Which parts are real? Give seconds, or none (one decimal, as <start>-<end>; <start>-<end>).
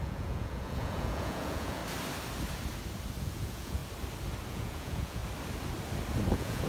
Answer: 1.8-3.2; 3.8-4.5; 5.2-6.3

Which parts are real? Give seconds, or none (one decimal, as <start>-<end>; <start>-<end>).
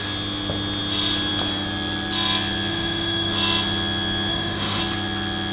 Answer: 0.0-2.7; 3.3-4.3; 4.8-5.5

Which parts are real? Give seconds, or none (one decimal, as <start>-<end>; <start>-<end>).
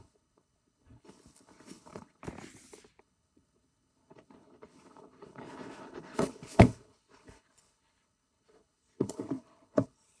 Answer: 2.2-3.0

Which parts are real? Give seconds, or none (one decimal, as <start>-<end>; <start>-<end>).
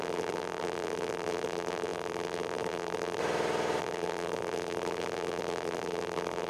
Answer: 3.2-3.8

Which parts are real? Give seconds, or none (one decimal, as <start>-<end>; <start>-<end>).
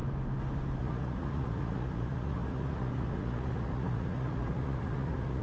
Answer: 0.0-0.8